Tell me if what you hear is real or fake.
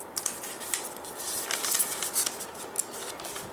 real